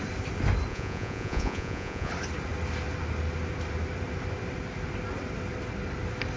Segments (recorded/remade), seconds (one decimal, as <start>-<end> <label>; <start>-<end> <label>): 0.0-0.7 recorded; 0.7-2.1 remade; 2.1-6.4 recorded